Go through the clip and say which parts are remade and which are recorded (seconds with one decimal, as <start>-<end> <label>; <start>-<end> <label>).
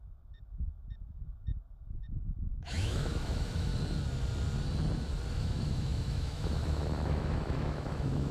0.0-3.7 remade; 3.7-5.3 recorded; 5.3-8.3 remade